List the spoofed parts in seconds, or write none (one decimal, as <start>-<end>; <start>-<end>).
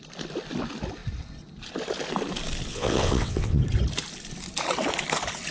2.7-3.6